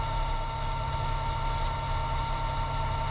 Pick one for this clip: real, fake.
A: real